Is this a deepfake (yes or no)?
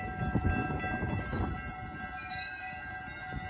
no